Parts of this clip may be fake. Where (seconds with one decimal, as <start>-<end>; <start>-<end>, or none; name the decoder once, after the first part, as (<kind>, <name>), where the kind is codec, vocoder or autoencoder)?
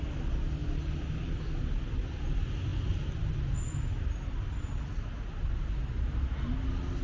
none